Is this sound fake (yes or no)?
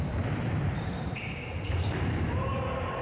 yes